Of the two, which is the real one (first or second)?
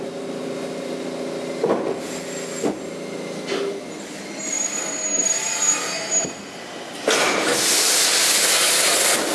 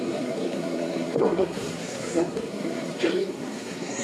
first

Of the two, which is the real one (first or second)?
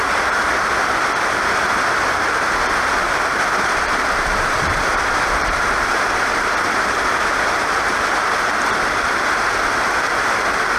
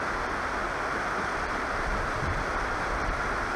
second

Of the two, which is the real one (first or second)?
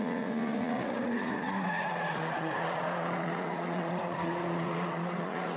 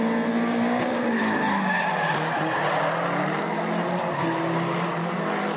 second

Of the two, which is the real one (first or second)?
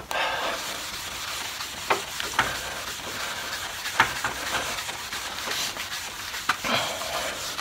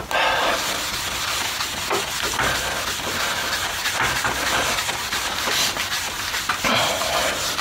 second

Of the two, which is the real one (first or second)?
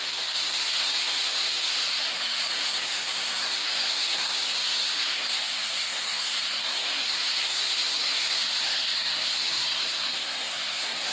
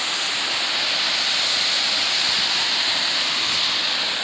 second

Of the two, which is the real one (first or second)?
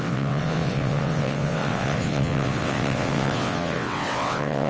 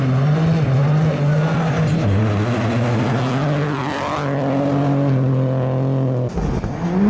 second